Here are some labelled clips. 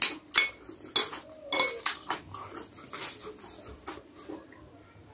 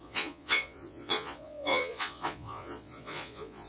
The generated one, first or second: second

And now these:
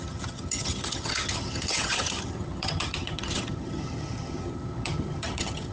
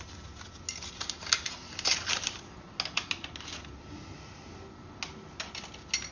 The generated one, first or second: first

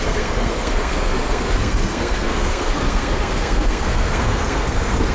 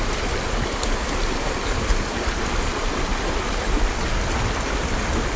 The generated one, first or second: first